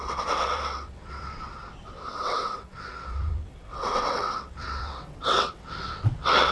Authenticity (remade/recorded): remade